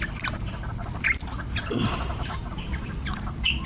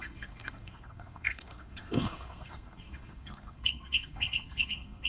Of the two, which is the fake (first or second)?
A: second